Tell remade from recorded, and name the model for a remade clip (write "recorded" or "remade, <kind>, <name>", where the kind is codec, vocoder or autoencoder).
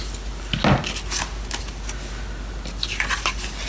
recorded